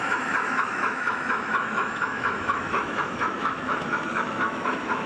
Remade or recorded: remade